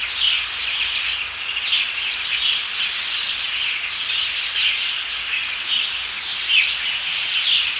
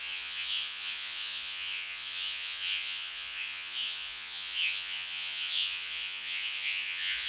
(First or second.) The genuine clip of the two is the first